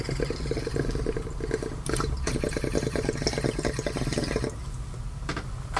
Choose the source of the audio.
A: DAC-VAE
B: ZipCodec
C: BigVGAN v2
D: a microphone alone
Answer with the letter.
D